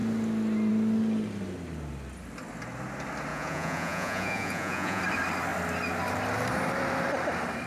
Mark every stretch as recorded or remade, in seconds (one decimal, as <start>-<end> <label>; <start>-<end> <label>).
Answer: 0.0-3.3 recorded; 3.3-5.0 remade; 5.0-7.7 recorded

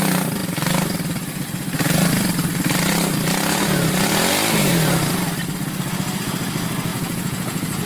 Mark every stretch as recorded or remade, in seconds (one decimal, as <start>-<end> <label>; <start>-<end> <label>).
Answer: 0.0-6.9 recorded; 6.9-7.9 remade

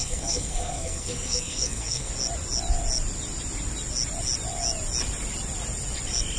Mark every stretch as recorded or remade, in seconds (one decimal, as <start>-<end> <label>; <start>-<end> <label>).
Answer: 0.0-2.1 remade; 2.1-6.4 recorded

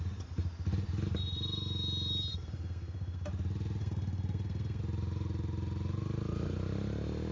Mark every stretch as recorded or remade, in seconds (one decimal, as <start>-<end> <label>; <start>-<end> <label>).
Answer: 0.0-2.3 recorded; 2.3-3.3 remade; 3.3-3.8 recorded; 3.8-4.8 remade; 4.8-7.3 recorded

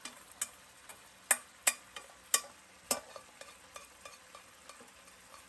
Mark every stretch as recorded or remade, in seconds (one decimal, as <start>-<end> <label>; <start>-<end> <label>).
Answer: 0.0-5.5 recorded

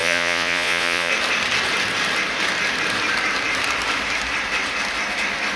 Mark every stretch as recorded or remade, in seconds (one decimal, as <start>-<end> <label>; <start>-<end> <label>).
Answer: 0.0-1.1 remade; 1.1-5.6 recorded